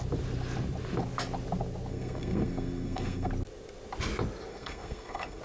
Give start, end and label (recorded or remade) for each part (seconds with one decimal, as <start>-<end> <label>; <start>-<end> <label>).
0.0-1.9 recorded; 1.9-3.3 remade; 3.3-4.5 recorded; 4.5-5.4 remade